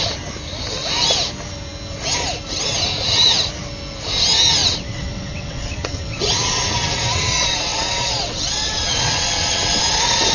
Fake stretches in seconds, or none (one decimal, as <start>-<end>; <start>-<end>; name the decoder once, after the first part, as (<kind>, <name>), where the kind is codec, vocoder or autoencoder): 4.6-9.8 (vocoder, WaveNeXt)